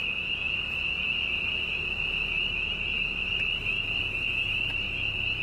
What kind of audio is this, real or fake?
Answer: real